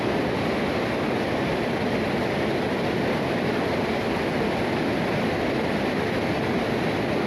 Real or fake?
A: real